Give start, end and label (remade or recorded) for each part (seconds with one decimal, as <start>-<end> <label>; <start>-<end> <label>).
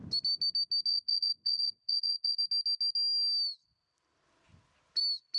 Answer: 0.0-0.9 recorded; 0.9-2.4 remade; 2.4-5.4 recorded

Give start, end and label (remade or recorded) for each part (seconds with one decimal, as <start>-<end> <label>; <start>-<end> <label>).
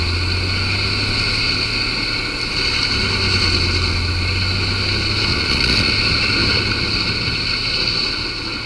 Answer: 0.0-5.3 recorded; 5.3-5.9 remade; 5.9-8.7 recorded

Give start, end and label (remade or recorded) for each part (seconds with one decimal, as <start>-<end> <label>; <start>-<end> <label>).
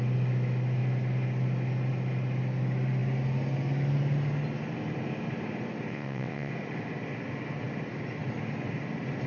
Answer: 0.0-5.9 recorded; 5.9-6.5 remade; 6.5-9.3 recorded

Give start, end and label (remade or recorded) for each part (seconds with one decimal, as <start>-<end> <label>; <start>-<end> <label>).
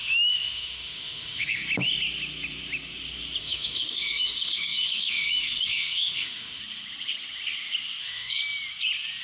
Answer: 0.0-1.6 remade; 1.6-3.4 recorded; 3.4-6.6 remade; 6.6-8.0 recorded; 8.0-8.4 remade; 8.4-9.2 recorded